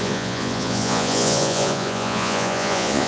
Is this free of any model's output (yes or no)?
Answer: no